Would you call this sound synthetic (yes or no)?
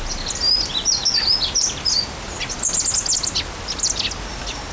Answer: no